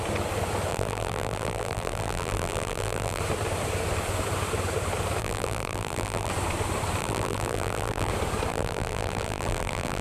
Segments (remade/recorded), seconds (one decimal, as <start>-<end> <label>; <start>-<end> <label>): 0.0-0.7 recorded; 0.7-3.2 remade; 3.2-5.2 recorded; 5.2-6.3 remade; 6.3-7.0 recorded; 7.0-8.1 remade; 8.1-8.5 recorded; 8.5-10.0 remade